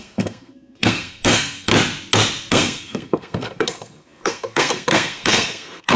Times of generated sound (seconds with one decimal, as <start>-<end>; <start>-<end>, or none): 0.0-1.7; 2.5-6.0